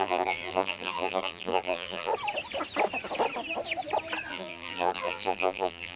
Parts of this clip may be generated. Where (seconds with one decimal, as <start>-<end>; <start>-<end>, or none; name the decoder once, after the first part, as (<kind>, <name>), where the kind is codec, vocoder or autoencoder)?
0.0-2.1 (vocoder, BigVGAN v2); 4.3-6.0